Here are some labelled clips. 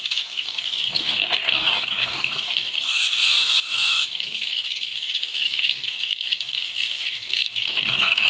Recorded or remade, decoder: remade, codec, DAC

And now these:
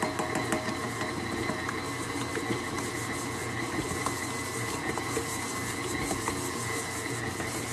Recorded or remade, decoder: recorded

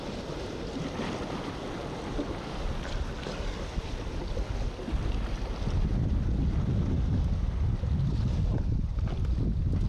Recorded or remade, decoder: recorded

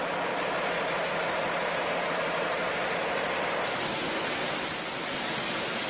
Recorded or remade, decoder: recorded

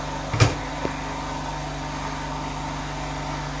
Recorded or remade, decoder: recorded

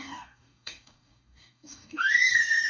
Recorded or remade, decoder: remade, codec, DAC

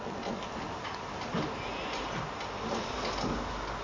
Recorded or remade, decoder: recorded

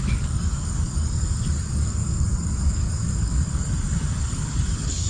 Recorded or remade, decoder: remade, codec, DAC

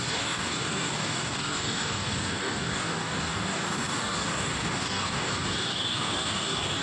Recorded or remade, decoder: remade, codec, DAC